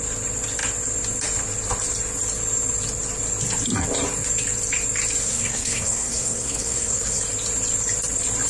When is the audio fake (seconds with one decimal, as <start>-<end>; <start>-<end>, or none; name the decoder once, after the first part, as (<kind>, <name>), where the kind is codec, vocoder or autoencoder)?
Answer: 5.2-7.2 (codec, SNAC)